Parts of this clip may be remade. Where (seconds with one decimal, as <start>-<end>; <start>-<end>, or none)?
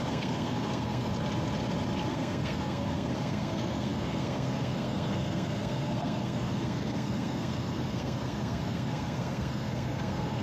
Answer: 0.0-1.1; 2.1-10.4